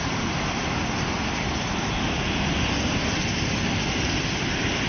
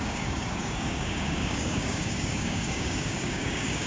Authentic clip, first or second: first